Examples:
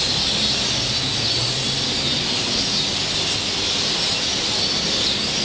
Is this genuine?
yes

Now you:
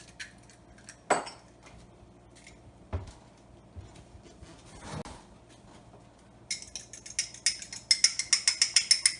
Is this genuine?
yes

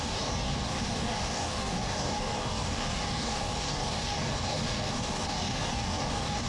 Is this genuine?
no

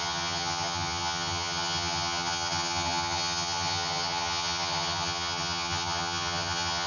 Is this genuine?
no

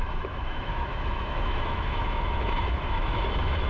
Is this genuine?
no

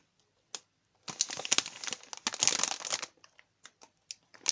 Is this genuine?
yes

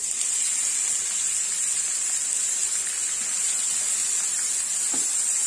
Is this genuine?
yes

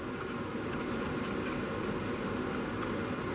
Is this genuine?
yes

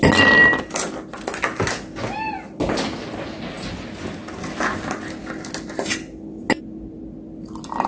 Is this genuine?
yes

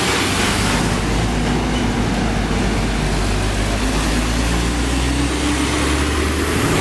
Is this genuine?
yes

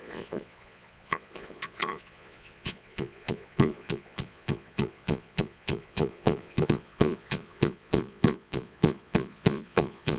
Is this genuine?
no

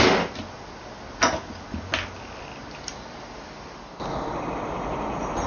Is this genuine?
yes